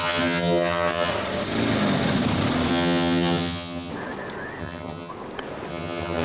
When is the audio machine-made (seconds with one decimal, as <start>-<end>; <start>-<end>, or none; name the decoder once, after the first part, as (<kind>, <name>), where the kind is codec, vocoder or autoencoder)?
0.0-1.1 (vocoder, HiFi-GAN); 2.7-3.9; 4.6-5.1; 5.7-6.2